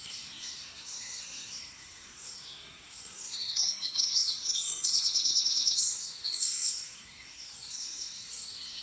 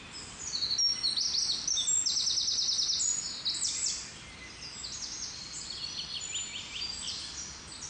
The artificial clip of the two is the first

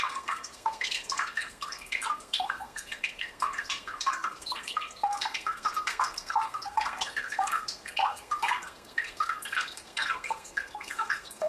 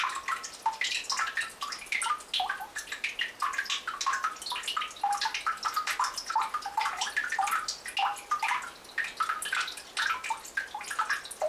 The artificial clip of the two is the first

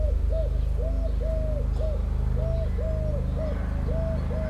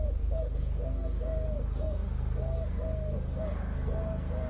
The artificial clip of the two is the second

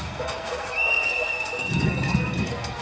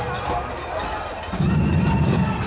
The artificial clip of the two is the first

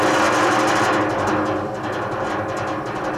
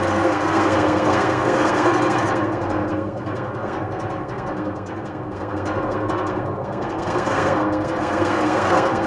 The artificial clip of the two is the second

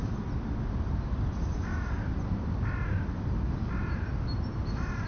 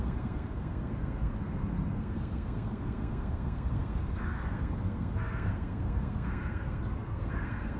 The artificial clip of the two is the second